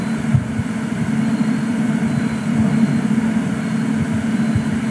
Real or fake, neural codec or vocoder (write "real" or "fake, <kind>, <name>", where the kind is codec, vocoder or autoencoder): real